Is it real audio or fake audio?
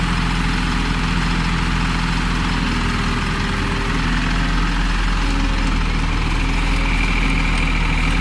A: real